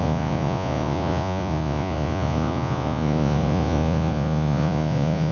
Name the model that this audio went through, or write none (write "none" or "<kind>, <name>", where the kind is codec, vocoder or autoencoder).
vocoder, Vocos